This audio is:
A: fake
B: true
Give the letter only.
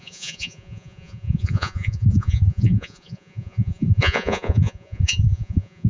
A